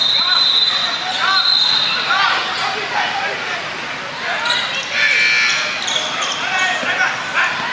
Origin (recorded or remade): recorded